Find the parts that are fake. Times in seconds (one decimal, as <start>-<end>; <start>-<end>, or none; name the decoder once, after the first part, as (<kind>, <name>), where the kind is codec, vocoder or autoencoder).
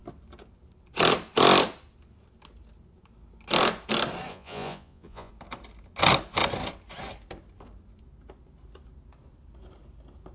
4.3-5.3 (vocoder, Vocos)